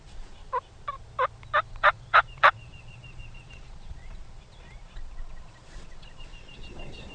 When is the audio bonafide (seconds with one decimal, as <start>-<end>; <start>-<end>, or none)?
0.4-1.7